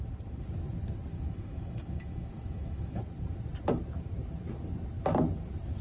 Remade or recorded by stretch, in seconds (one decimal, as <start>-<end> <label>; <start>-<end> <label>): 0.0-1.1 recorded; 1.1-3.0 remade; 3.0-5.8 recorded